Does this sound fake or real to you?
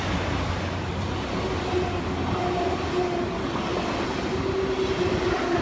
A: real